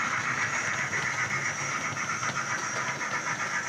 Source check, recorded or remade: recorded